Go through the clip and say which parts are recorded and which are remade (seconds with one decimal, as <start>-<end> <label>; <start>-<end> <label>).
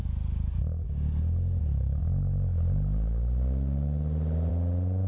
0.0-5.1 recorded